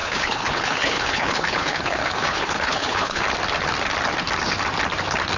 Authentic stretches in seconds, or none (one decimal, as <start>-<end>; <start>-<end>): 3.2-5.4